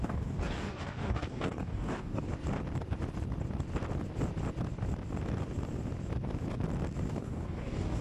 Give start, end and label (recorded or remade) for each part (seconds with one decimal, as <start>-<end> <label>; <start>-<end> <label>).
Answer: 0.0-2.3 remade; 2.3-7.1 recorded; 7.1-8.0 remade